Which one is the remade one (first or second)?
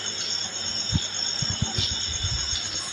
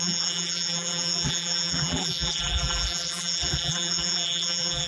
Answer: second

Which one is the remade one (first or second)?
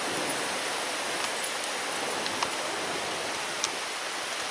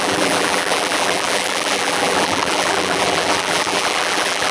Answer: second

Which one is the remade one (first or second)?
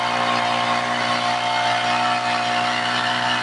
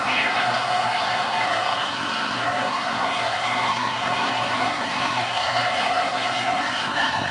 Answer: second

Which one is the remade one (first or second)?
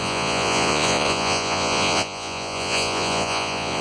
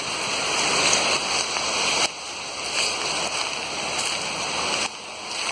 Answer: first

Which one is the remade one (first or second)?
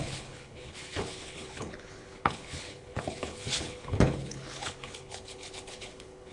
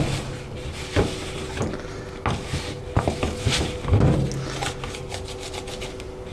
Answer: first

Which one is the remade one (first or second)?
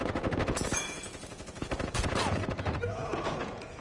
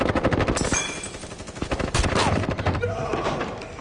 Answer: first